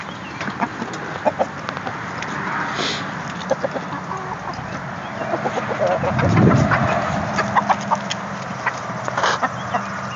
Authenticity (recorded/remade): recorded